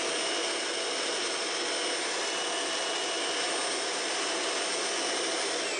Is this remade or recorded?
recorded